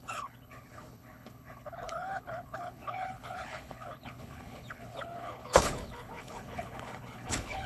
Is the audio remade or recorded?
remade